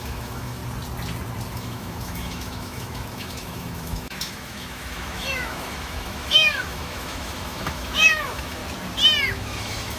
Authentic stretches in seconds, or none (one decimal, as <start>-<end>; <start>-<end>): 0.6-1.5; 8.6-9.3